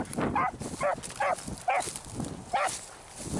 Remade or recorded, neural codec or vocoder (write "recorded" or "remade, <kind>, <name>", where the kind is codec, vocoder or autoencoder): recorded